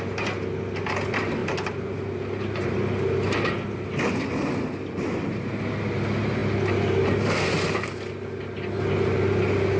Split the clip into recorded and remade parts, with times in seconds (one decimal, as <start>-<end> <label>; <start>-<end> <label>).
0.0-9.8 recorded